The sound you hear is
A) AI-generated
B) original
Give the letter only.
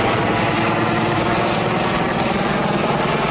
B